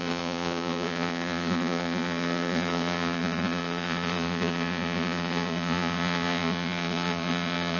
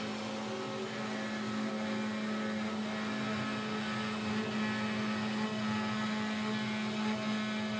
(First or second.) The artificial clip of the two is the first